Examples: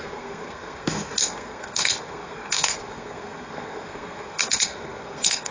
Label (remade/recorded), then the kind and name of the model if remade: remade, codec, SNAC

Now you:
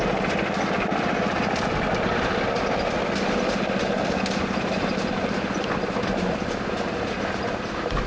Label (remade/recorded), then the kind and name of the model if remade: recorded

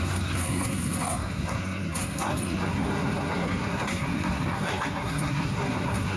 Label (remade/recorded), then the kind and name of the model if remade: remade, codec, SNAC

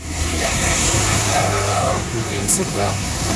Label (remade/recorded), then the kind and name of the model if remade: remade, codec, SNAC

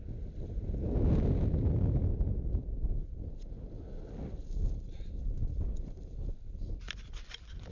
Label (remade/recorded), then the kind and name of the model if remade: recorded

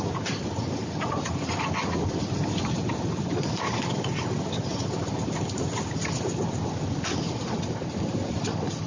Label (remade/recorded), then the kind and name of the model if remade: recorded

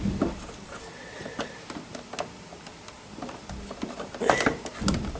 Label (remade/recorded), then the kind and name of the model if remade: recorded